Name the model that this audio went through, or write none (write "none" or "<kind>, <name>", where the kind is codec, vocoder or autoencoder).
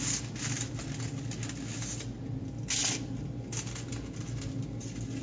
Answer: none